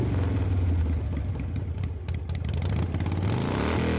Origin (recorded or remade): recorded